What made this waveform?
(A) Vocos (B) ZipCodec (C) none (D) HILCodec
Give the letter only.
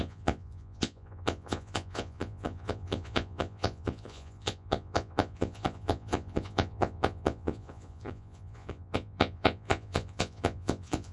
A